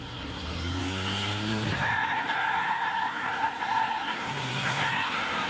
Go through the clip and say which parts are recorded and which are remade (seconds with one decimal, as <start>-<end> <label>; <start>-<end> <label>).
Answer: 0.0-5.5 remade